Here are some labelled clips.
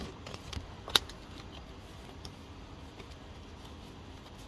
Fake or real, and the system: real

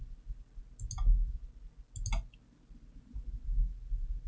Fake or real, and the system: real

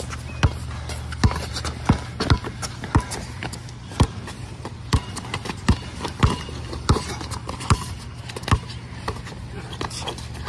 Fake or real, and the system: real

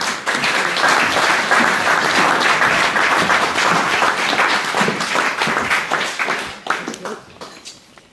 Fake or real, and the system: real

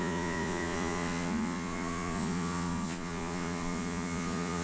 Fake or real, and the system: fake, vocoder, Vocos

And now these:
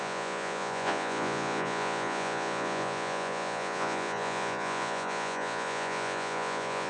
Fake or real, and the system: fake, vocoder, Vocos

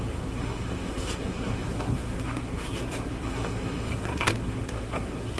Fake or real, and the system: fake, codec, SNAC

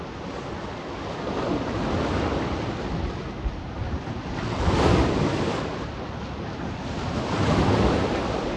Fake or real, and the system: real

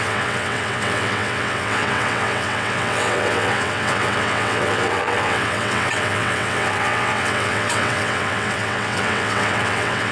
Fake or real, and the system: fake, vocoder, WaveNeXt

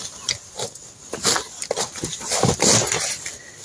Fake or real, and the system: real